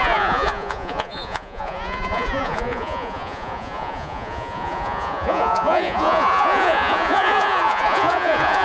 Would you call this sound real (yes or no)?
no